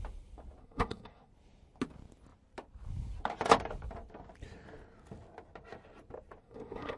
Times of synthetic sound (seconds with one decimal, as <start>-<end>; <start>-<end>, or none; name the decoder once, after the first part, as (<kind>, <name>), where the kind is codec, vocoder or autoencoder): 0.6-1.3 (codec, SNAC); 6.4-7.0